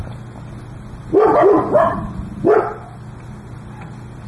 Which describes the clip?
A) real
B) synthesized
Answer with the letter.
A